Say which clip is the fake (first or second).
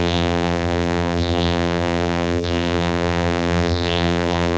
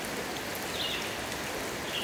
first